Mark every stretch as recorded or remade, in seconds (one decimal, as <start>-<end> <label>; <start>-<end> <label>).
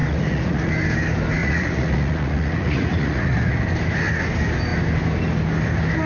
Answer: 0.0-0.7 remade; 0.7-1.4 recorded; 1.4-3.6 remade; 3.6-6.1 recorded